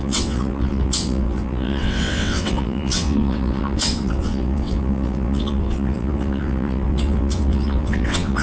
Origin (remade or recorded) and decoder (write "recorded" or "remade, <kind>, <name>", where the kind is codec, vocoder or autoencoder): remade, vocoder, WaveNeXt